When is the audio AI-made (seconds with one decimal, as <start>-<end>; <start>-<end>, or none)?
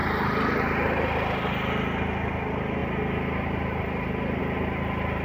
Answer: 0.0-1.7